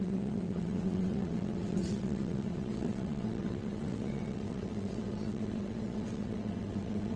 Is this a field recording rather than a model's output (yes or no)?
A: no